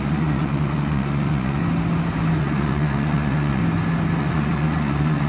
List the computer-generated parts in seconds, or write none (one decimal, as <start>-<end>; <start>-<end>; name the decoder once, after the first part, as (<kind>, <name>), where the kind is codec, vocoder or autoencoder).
0.0-1.6 (vocoder, Vocos); 2.4-3.6; 4.2-5.3